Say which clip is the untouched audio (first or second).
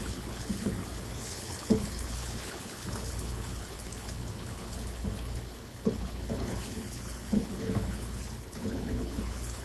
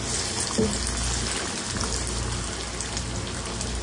second